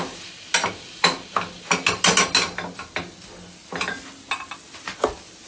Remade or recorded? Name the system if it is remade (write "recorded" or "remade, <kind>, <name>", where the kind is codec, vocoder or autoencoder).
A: recorded